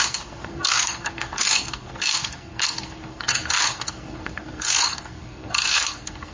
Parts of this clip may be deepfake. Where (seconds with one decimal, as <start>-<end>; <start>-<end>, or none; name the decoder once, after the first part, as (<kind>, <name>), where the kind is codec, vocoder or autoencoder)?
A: 0.0-6.3 (codec, SNAC)